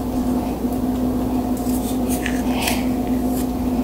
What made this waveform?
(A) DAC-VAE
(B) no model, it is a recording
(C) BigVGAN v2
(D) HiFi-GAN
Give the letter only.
B